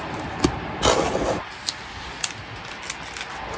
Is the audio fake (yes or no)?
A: no